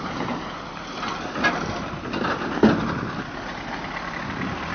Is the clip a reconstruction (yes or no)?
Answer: no